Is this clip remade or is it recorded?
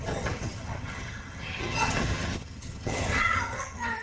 remade